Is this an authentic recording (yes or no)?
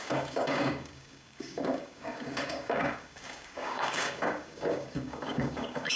no